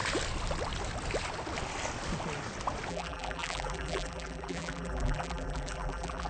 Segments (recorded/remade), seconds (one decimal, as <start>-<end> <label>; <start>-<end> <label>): 0.0-2.9 recorded; 2.9-6.3 remade